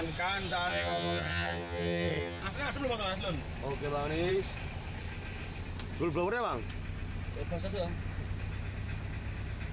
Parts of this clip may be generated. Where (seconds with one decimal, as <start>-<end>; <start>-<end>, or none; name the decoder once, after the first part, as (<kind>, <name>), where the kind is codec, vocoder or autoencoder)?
0.7-2.4 (vocoder, HiFi-GAN)